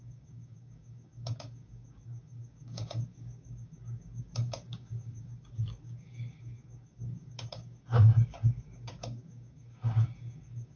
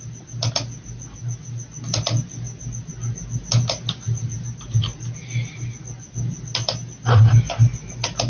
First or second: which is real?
second